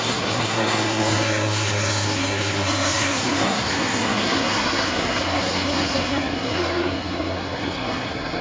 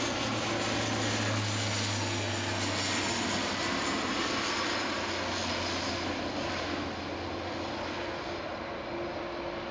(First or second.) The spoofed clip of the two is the first